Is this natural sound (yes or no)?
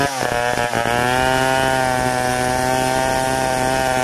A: yes